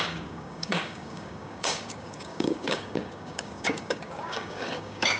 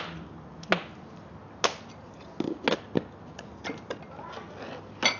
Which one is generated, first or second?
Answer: first